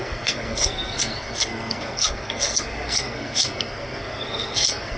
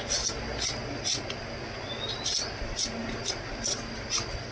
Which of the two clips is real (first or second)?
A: second